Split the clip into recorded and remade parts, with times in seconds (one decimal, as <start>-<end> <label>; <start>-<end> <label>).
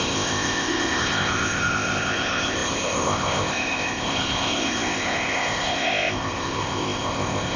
0.0-7.6 remade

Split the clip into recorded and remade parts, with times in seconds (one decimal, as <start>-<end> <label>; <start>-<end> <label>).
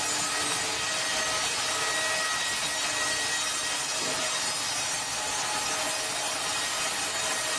0.0-7.6 recorded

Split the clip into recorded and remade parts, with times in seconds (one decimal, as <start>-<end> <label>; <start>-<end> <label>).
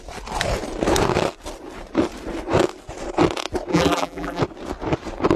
0.0-3.7 recorded; 3.7-4.4 remade; 4.4-5.4 recorded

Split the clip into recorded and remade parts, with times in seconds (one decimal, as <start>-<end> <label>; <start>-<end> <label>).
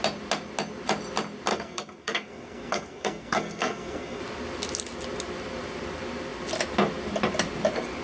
0.0-1.5 recorded; 1.5-4.2 remade; 4.2-8.0 recorded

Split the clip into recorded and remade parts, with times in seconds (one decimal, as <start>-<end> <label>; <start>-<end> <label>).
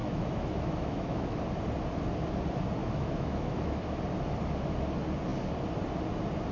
0.0-1.4 remade; 1.4-2.8 recorded; 2.8-4.0 remade; 4.0-6.5 recorded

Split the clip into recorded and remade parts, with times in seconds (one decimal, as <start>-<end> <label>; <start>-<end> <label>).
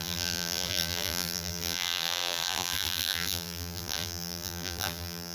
0.0-5.3 remade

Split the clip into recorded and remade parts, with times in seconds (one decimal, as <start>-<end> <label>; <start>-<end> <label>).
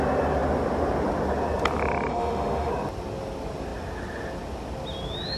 0.0-2.1 recorded; 2.1-2.7 remade; 2.7-5.4 recorded